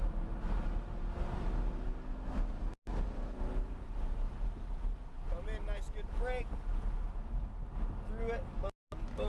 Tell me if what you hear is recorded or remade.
recorded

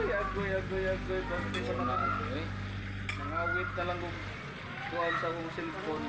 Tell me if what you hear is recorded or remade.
recorded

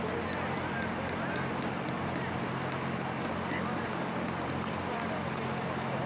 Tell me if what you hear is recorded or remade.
recorded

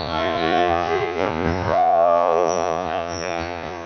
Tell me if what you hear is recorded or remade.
remade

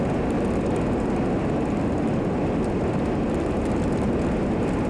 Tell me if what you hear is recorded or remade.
recorded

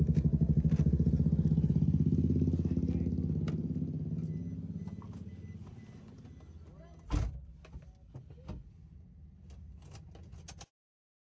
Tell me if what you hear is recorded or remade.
recorded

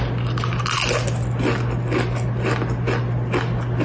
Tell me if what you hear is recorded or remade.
recorded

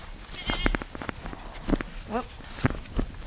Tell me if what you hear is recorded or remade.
recorded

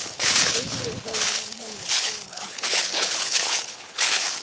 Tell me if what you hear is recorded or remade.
remade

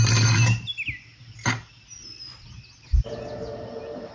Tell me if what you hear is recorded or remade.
recorded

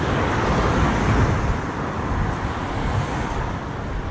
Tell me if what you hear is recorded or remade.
recorded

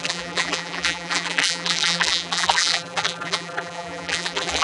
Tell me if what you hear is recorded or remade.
remade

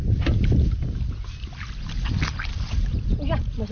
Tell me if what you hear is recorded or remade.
recorded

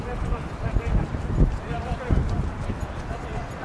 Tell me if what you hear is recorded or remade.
recorded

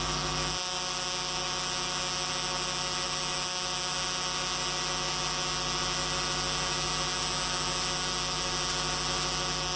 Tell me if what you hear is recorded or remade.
recorded